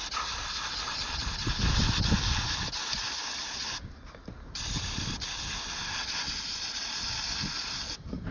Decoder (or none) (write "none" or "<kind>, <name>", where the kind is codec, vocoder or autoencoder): none